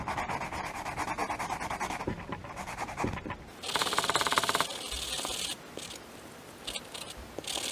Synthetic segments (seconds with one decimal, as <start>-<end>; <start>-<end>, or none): 2.4-2.9; 3.8-5.9